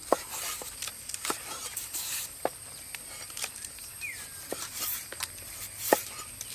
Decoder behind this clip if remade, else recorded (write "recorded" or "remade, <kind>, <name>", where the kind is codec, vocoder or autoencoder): recorded